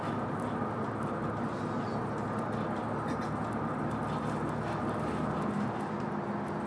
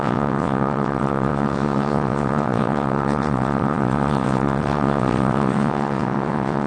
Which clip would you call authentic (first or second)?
first